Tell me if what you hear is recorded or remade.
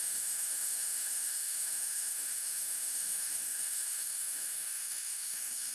remade